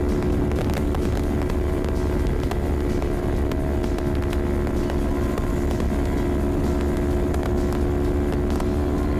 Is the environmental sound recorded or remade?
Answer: recorded